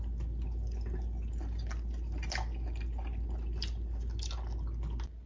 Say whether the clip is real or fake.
real